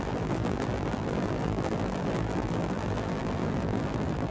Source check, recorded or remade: remade